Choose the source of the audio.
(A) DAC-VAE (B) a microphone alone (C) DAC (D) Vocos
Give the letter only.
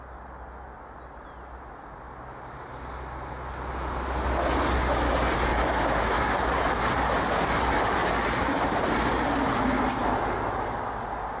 B